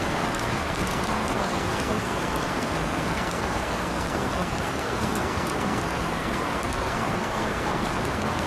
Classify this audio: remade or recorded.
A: remade